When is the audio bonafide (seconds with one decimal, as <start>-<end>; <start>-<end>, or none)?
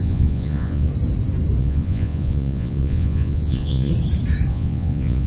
0.9-1.6; 3.9-4.5